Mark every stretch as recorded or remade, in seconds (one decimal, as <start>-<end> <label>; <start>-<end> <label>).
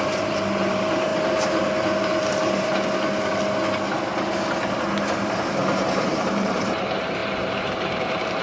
0.0-2.7 remade; 2.7-5.1 recorded; 5.1-8.4 remade